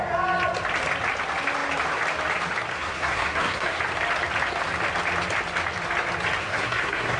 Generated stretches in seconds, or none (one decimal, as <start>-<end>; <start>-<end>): 2.7-3.8; 6.4-7.2